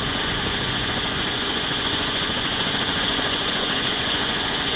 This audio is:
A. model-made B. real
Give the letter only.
A